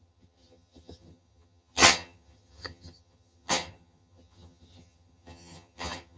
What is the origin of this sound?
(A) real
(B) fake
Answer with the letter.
B